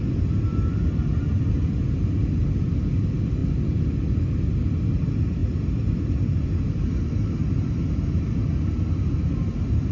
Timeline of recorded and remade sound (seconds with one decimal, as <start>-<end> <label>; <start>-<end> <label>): 0.0-9.9 recorded